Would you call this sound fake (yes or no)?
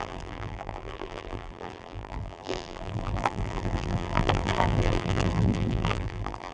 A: yes